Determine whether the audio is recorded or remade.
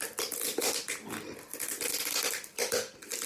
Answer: recorded